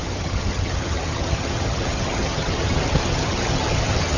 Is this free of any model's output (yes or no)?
no